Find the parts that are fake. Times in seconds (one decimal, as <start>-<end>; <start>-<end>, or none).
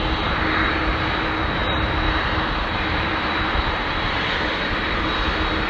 1.6-5.0